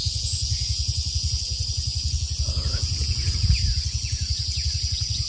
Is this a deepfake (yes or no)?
yes